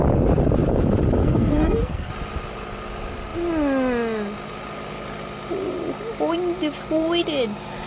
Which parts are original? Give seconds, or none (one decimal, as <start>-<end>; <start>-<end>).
0.0-1.2; 2.1-7.9